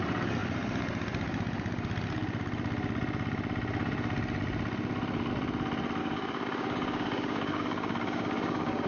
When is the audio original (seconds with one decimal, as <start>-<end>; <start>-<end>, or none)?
0.0-6.0